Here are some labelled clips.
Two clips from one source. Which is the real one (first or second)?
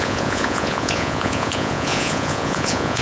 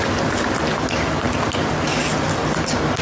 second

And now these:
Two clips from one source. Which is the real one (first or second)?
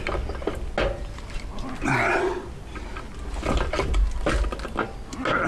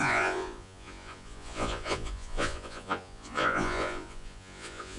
first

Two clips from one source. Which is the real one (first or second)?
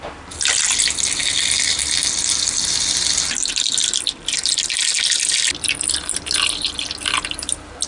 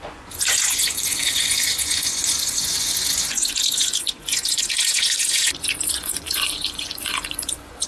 first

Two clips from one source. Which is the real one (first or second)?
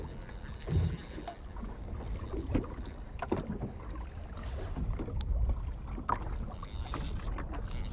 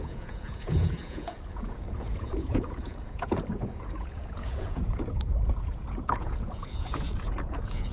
first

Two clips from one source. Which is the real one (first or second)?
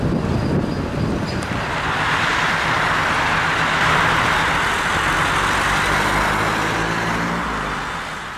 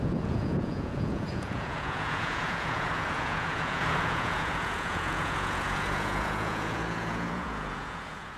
first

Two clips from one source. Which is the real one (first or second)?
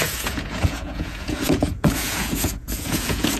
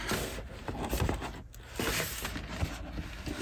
second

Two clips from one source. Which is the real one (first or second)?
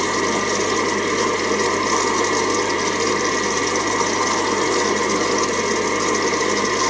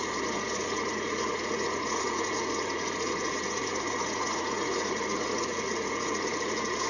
first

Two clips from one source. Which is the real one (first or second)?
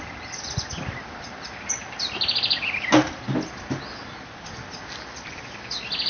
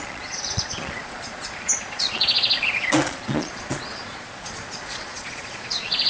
first